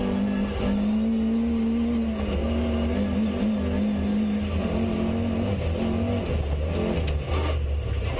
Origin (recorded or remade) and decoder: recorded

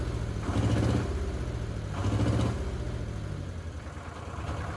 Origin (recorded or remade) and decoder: recorded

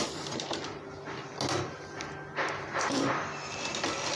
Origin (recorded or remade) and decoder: recorded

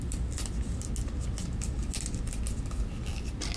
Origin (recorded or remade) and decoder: recorded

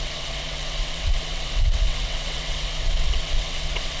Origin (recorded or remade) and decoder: remade, vocoder, WaveNeXt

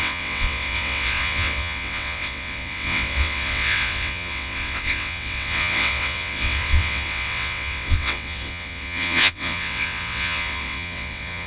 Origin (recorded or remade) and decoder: remade, vocoder, WaveNeXt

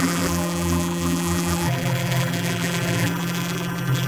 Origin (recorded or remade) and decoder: remade, vocoder, BigVGAN v2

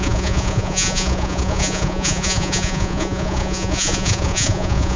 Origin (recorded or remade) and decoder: remade, vocoder, Vocos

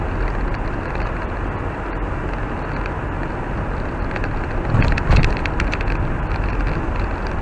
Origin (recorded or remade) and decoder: recorded